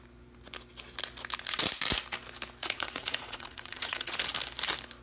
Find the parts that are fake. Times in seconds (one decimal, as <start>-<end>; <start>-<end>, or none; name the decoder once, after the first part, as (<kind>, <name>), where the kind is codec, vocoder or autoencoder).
2.6-4.2 (vocoder, Vocos)